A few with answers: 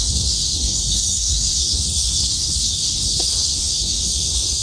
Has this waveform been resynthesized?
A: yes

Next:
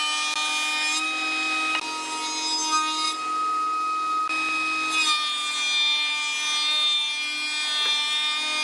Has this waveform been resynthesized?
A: no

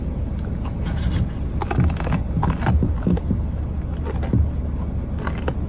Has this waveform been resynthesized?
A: no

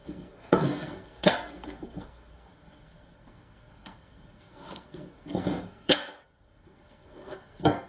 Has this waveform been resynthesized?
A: yes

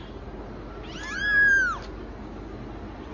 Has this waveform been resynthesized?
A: no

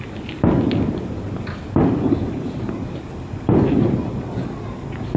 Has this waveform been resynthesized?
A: no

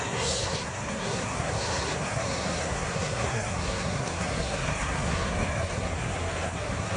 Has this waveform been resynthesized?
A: yes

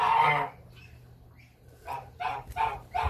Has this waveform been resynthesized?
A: no